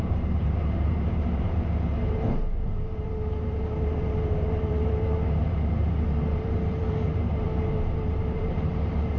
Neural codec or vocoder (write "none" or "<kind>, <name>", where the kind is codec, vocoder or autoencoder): vocoder, BigVGAN v2